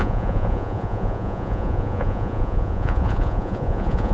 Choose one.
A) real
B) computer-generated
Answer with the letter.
B